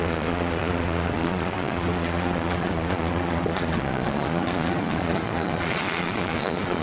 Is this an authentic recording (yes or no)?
no